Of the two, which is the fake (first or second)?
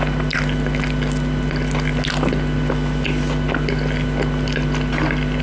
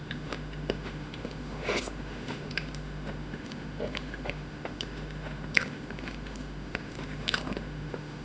second